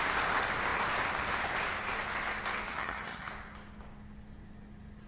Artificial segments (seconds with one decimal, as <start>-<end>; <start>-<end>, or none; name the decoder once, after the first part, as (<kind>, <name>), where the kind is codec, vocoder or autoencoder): 2.7-3.3 (vocoder, HiFi-GAN)